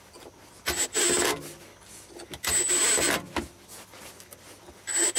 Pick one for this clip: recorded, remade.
recorded